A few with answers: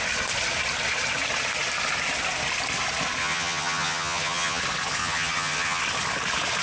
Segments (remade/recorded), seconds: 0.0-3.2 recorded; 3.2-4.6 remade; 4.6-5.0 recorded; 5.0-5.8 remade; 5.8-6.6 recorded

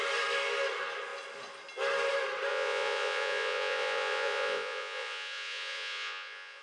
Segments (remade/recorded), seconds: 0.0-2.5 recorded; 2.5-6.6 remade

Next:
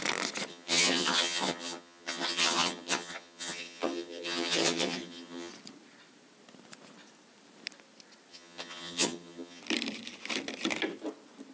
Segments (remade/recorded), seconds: 0.0-0.5 recorded; 0.5-5.5 remade; 5.5-8.3 recorded; 8.3-9.6 remade; 9.6-11.5 recorded